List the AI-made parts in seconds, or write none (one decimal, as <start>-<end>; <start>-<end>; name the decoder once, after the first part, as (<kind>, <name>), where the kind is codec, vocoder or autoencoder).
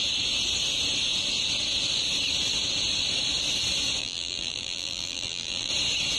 4.0-5.7 (vocoder, BigVGAN v2)